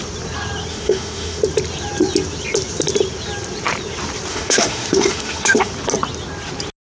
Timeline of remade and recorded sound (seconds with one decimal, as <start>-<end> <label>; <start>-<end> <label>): 0.0-0.7 recorded; 0.7-1.4 remade; 1.4-4.3 recorded; 4.3-5.7 remade; 5.7-6.8 recorded